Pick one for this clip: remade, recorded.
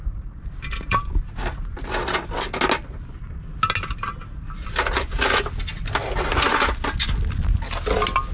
recorded